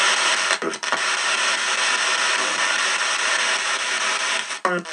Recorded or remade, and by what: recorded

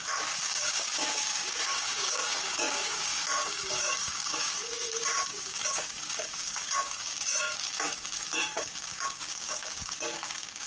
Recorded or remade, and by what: remade, codec, DAC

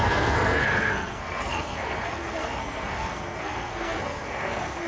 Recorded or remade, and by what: remade, codec, SNAC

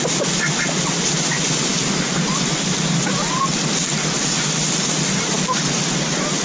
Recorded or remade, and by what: recorded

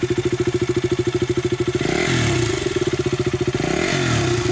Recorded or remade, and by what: recorded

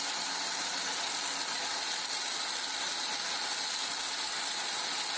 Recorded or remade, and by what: recorded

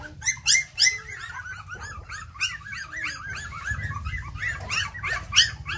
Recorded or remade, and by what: recorded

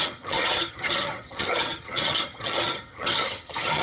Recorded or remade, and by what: remade, vocoder, HiFi-GAN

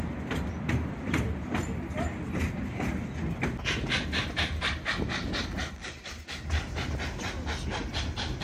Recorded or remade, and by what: recorded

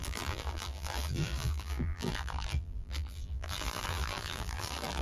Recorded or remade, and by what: remade, vocoder, BigVGAN v2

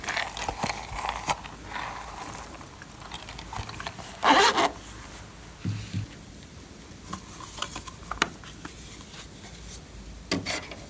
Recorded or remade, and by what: recorded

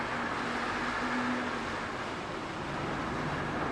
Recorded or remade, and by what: recorded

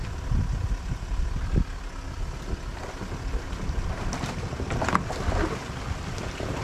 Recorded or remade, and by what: recorded